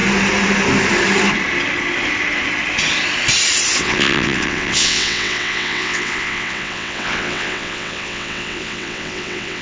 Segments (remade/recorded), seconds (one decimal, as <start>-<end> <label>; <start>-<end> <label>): 0.0-3.8 recorded; 3.8-9.6 remade